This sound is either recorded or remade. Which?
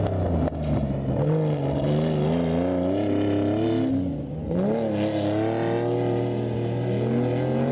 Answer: recorded